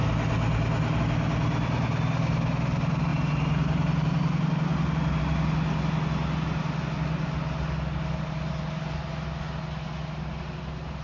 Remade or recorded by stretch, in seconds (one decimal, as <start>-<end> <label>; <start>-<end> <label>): 0.0-11.0 recorded